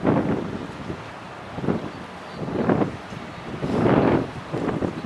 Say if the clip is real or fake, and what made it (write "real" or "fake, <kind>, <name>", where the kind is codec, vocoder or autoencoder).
fake, vocoder, BigVGAN v2